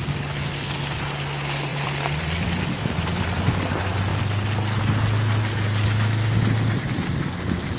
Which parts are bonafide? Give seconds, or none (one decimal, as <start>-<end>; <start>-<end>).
0.0-1.7; 3.4-7.8